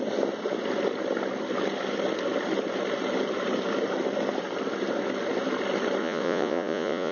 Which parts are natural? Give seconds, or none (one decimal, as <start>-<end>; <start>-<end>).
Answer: 0.0-6.0